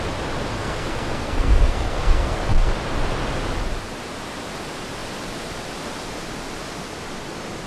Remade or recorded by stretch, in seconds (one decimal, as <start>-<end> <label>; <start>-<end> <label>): 0.0-0.5 recorded; 0.5-2.7 remade; 2.7-7.7 recorded